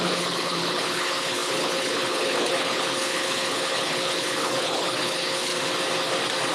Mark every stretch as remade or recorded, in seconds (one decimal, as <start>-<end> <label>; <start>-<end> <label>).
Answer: 0.0-5.5 remade; 5.5-6.5 recorded